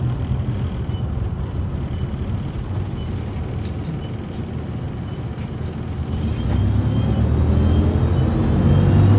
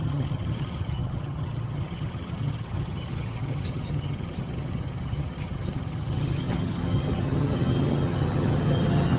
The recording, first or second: first